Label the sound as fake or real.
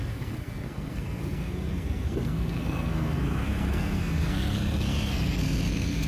fake